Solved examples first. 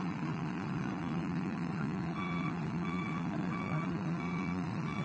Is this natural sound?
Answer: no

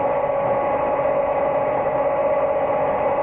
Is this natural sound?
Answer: yes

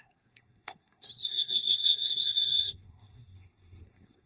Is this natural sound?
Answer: no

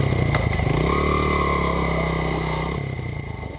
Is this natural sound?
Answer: yes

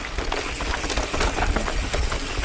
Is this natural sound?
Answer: yes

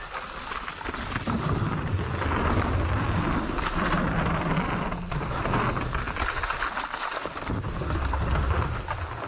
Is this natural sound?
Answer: yes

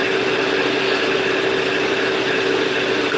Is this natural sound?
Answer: yes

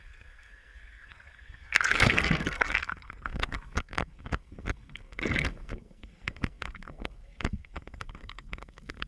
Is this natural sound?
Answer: no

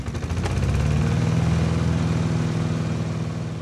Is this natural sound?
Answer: yes